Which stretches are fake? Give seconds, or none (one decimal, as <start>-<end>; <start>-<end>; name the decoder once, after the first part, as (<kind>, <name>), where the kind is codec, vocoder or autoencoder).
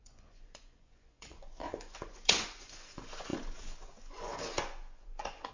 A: 0.0-5.5 (vocoder, Vocos)